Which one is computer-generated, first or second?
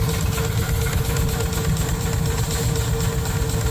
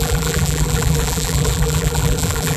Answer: second